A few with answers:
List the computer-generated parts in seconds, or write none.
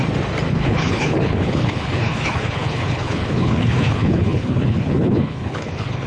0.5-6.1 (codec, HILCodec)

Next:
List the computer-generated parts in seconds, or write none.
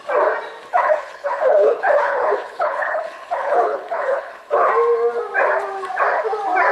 0.7-4.7 (codec, HILCodec)